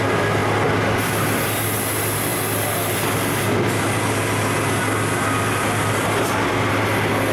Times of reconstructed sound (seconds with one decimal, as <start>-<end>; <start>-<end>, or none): none